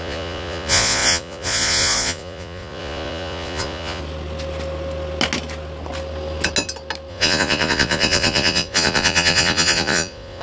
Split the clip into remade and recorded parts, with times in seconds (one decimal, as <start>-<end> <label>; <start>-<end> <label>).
0.0-4.0 remade; 4.0-7.1 recorded; 7.1-10.4 remade